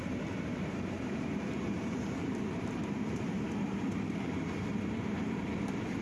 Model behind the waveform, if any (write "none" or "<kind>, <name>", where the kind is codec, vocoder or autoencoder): vocoder, BigVGAN v2